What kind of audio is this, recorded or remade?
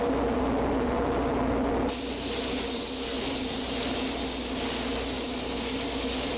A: remade